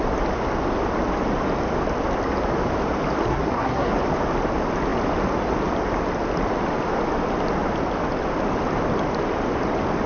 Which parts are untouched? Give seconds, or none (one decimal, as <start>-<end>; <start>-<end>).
0.0-3.3; 3.9-10.1